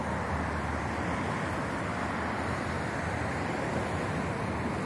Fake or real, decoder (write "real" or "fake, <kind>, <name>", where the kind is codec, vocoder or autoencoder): real